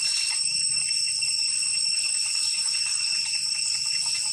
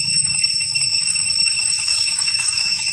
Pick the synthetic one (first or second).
second